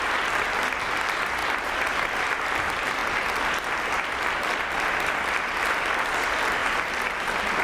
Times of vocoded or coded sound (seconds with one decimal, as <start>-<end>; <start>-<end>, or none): none